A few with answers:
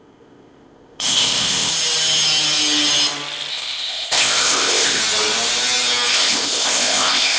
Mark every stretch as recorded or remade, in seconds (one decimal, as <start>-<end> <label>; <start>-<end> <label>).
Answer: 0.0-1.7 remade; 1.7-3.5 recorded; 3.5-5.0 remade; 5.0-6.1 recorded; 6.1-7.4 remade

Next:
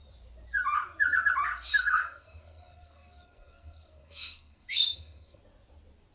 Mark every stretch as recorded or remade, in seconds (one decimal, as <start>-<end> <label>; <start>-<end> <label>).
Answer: 0.0-1.7 recorded; 1.7-5.4 remade; 5.4-6.1 recorded

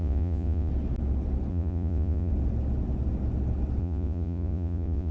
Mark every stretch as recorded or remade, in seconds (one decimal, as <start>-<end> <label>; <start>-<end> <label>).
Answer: 0.0-0.7 remade; 0.7-1.5 recorded; 1.5-2.3 remade; 2.3-3.8 recorded; 3.8-5.1 remade